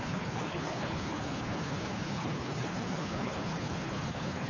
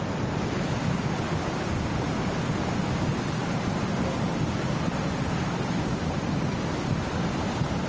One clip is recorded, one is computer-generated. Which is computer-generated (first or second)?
first